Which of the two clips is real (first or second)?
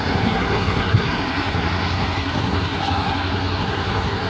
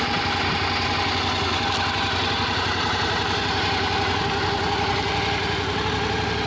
second